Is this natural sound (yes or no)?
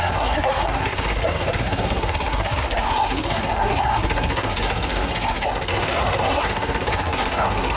no